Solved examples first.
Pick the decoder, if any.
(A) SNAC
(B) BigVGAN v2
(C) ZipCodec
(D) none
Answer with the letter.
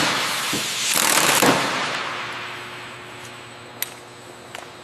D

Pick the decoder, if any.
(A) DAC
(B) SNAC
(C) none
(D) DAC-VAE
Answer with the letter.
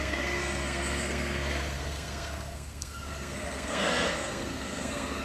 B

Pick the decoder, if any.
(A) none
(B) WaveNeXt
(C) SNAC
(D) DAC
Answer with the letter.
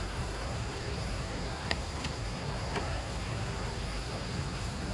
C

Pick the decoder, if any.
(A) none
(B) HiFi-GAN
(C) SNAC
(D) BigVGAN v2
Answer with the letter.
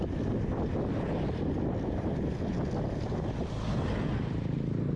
A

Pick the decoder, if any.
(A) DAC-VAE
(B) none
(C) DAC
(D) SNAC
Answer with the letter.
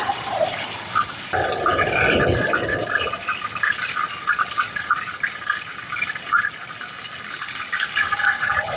B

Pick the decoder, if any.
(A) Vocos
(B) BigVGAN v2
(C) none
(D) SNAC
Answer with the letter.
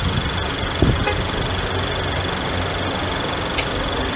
C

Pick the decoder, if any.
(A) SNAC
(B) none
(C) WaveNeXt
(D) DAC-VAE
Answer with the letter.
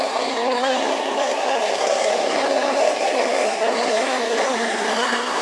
A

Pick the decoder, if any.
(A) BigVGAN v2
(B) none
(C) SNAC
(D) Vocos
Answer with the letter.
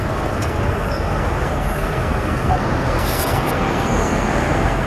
C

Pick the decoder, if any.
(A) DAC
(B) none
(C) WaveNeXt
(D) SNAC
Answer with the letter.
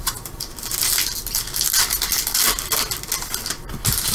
B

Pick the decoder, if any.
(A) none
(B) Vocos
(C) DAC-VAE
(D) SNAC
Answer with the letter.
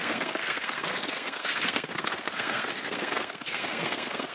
D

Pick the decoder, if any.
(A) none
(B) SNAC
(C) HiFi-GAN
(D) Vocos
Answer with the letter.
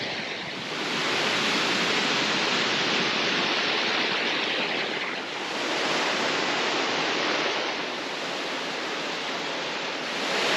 A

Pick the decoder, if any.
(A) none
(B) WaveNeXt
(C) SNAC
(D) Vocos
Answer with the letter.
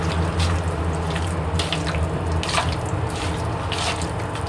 A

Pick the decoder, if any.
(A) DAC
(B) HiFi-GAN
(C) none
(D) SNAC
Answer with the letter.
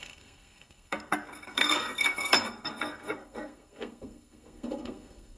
D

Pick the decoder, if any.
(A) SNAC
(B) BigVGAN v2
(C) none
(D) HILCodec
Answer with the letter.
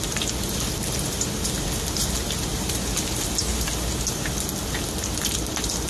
C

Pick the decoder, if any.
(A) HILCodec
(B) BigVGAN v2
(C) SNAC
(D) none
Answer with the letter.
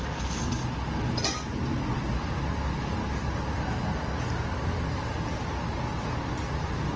D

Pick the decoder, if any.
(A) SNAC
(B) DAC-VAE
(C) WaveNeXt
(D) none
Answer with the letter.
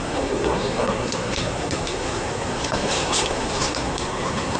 A